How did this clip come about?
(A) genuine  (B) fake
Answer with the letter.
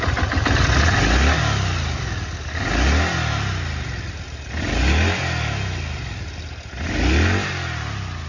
A